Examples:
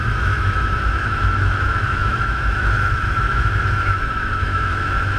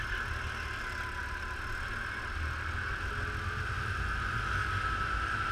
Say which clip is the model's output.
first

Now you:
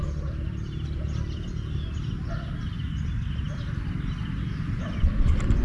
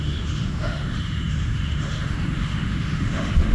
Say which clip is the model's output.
second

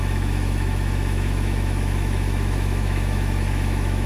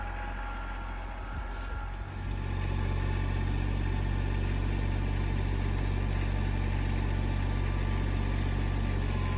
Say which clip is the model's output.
first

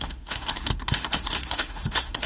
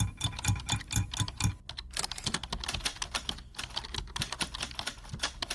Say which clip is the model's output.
first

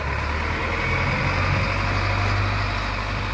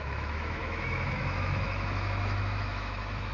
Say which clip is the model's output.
second